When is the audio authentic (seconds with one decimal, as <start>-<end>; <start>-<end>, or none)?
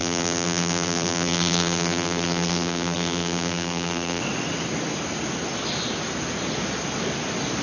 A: 4.2-7.6